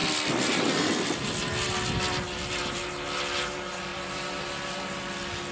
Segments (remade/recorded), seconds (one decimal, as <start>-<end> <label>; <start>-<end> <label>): 0.0-5.5 recorded